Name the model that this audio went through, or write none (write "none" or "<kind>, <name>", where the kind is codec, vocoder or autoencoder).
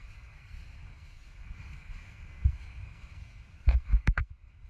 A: codec, SNAC